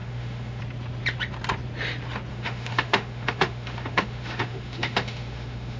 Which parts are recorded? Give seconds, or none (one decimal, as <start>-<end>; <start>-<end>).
0.6-2.3